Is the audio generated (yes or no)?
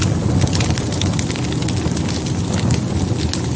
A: no